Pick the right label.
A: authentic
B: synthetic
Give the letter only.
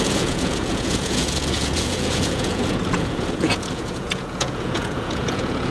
B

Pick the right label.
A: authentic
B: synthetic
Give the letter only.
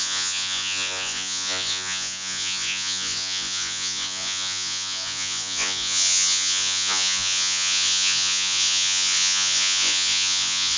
B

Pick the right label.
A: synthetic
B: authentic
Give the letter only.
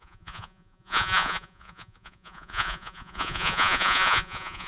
A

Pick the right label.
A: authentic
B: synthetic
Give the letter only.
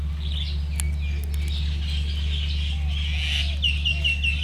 A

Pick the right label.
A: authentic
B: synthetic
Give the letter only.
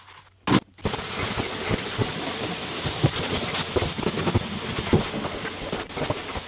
A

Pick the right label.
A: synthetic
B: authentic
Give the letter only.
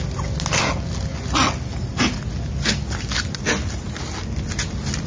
B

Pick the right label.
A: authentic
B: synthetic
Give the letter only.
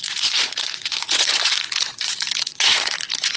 B